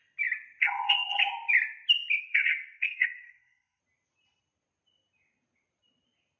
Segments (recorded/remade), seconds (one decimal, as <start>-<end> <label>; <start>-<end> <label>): 0.0-0.6 recorded; 0.6-1.2 remade; 1.2-2.2 recorded; 2.2-3.8 remade; 3.8-6.4 recorded